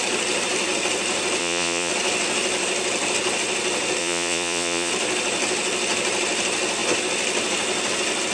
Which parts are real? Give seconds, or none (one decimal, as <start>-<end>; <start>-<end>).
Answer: 0.0-1.4; 1.9-4.0; 4.9-8.3